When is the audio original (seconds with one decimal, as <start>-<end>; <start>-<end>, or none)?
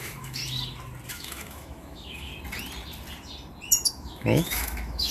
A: 0.4-1.1; 2.3-3.9